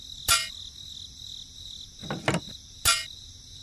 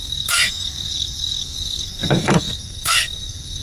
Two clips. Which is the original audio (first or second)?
first